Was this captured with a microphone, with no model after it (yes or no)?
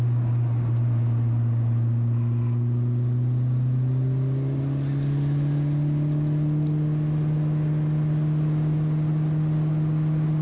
yes